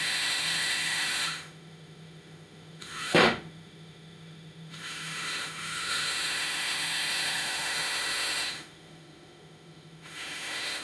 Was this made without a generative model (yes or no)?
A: no